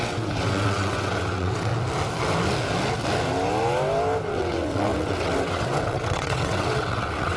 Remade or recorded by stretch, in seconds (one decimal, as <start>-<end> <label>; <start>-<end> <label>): 0.0-1.7 remade; 1.7-4.3 recorded; 4.3-7.4 remade

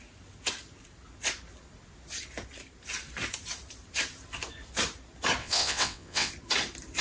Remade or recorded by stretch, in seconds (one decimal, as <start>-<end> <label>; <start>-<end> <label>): 0.0-5.4 recorded; 5.4-6.3 remade; 6.3-7.0 recorded

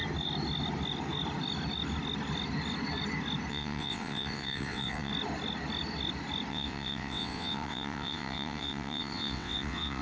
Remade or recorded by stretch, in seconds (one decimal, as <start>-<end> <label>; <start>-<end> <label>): 0.0-3.5 recorded; 3.5-5.1 remade; 5.1-6.5 recorded; 6.5-10.0 remade